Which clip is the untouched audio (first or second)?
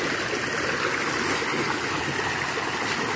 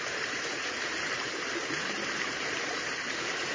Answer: first